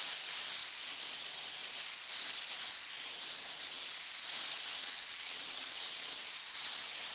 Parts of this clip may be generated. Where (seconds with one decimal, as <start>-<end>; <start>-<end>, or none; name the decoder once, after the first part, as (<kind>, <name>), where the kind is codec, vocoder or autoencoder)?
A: 4.8-6.1 (vocoder, WaveNeXt)